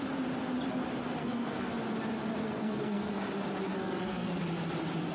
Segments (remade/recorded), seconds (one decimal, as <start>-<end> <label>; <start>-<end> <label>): 0.0-1.2 recorded; 1.2-1.7 remade; 1.7-2.4 recorded; 2.4-3.1 remade; 3.1-3.7 recorded; 3.7-4.4 remade; 4.4-5.1 recorded